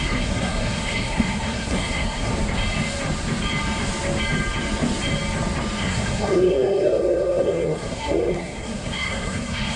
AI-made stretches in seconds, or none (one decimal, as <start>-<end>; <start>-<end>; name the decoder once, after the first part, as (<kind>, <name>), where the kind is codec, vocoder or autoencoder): 0.0-2.3 (codec, SNAC); 5.8-9.8